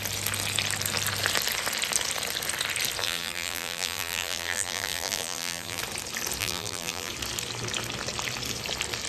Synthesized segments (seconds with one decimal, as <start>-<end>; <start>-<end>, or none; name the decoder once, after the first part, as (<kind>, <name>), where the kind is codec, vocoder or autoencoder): 3.0-5.8 (vocoder, BigVGAN v2); 6.4-7.1